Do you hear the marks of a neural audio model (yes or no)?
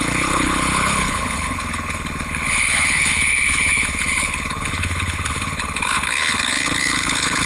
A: yes